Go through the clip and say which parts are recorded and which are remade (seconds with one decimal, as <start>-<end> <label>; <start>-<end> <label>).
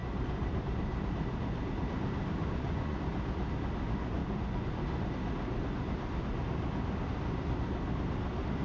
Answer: 0.0-2.4 recorded; 2.4-3.0 remade; 3.0-4.2 recorded; 4.2-4.7 remade; 4.7-8.6 recorded